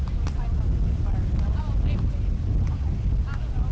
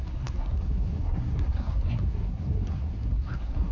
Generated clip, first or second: second